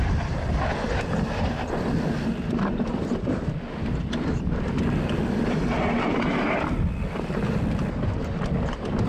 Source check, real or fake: real